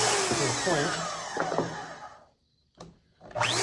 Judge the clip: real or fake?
real